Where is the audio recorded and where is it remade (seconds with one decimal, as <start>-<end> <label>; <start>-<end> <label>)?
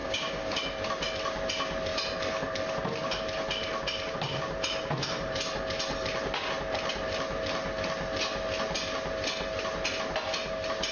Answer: 0.0-0.6 remade; 0.6-10.9 recorded